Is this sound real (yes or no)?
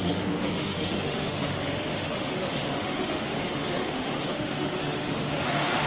no